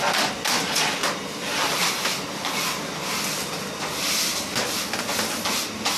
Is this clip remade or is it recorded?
recorded